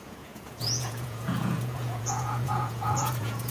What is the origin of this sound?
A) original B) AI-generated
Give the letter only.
B